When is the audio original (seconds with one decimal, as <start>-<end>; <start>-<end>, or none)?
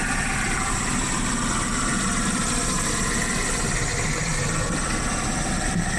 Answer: 2.9-6.0